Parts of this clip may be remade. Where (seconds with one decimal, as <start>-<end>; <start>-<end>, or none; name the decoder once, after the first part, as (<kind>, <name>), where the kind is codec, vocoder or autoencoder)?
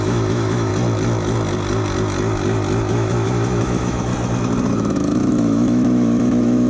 0.0-0.7 (autoencoder, DAC-VAE); 2.9-4.1; 4.7-6.7